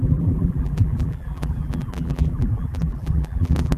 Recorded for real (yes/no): no